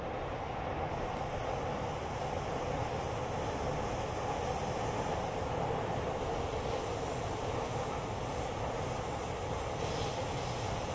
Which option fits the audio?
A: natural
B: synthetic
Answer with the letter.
A